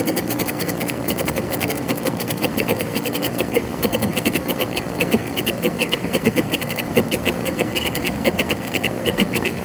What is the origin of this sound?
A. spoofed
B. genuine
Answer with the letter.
A